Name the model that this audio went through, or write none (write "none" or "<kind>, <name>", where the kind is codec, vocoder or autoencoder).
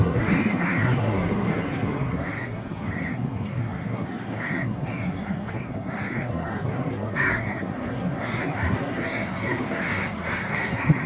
codec, SNAC